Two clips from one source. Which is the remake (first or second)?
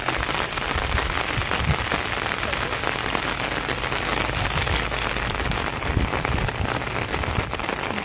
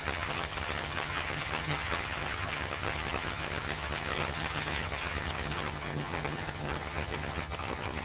second